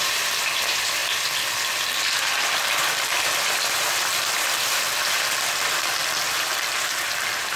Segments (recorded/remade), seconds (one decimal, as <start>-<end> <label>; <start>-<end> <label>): 0.0-1.0 remade; 1.0-3.9 recorded; 3.9-6.0 remade; 6.0-6.6 recorded; 6.6-7.6 remade